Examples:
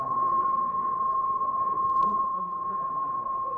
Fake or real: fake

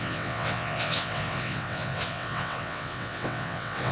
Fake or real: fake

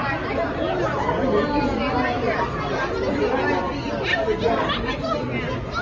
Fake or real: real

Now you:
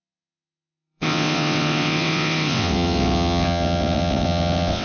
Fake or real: fake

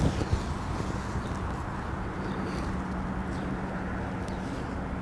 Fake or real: real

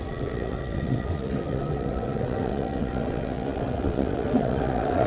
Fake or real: fake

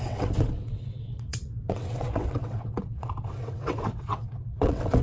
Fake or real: fake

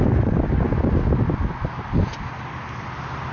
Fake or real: real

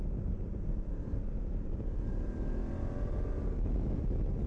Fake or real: real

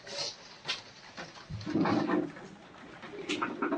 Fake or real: real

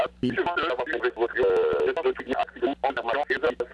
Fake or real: real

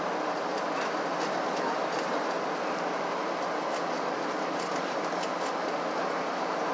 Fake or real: real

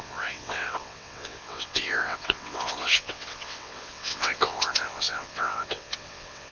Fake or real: fake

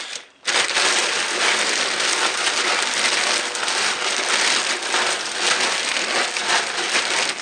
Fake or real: real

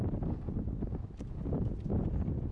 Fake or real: real